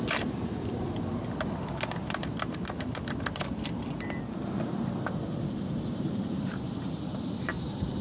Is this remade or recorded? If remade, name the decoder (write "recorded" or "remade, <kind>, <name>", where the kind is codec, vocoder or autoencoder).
recorded